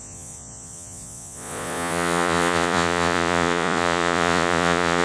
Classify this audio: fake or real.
fake